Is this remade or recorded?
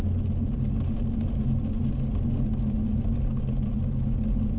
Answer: recorded